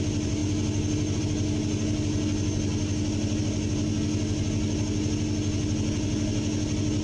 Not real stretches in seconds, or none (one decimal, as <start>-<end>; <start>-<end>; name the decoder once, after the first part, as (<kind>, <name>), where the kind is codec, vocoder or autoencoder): none